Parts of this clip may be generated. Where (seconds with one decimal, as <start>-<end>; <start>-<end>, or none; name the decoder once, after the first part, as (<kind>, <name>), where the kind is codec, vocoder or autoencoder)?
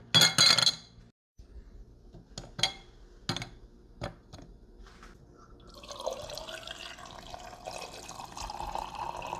none